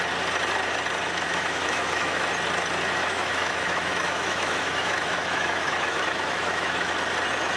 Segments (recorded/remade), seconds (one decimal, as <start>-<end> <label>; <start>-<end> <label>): 0.0-1.3 recorded; 1.3-2.3 remade; 2.3-3.0 recorded; 3.0-6.9 remade; 6.9-7.6 recorded